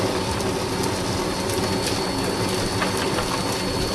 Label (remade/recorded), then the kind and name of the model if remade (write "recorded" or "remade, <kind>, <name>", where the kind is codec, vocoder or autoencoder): recorded